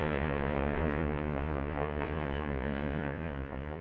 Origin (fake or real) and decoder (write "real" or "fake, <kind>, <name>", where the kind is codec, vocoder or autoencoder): fake, vocoder, Vocos